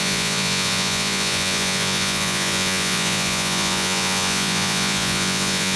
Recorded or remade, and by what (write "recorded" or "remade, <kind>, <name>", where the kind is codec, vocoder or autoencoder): remade, vocoder, Vocos